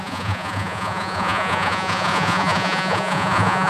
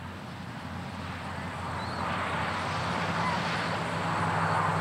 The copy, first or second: first